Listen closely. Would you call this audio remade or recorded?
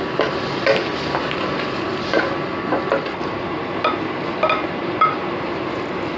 recorded